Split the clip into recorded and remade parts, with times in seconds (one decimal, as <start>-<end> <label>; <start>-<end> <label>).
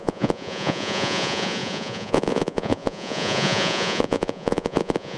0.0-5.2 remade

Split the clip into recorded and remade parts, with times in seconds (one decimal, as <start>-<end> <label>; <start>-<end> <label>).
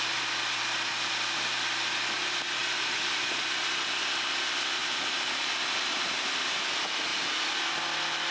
0.0-8.3 recorded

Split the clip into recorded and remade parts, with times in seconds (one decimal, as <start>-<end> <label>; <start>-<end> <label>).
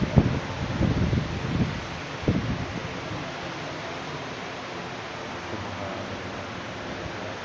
0.0-7.4 recorded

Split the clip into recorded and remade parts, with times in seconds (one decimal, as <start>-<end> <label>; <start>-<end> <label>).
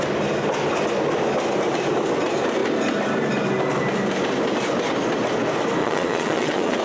0.0-5.8 recorded; 5.8-6.8 remade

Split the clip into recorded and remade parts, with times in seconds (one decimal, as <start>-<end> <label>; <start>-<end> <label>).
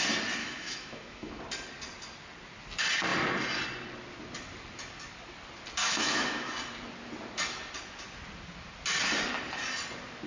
0.0-0.4 recorded; 0.4-1.4 remade; 1.4-5.8 recorded; 5.8-6.5 remade; 6.5-10.3 recorded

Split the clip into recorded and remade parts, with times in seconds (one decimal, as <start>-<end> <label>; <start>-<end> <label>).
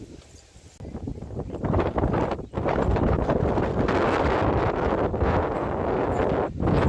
0.0-1.1 recorded; 1.1-2.1 remade; 2.1-6.9 recorded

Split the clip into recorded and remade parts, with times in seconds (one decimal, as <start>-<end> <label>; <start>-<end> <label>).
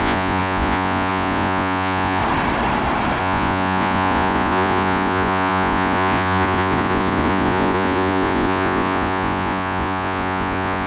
0.0-2.2 remade; 2.2-3.2 recorded; 3.2-10.9 remade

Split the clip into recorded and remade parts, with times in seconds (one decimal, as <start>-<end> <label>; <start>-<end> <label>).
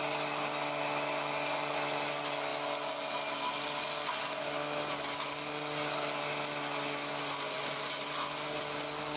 0.0-9.2 recorded